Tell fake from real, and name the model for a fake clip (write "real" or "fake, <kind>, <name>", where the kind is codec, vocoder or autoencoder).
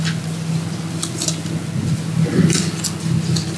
real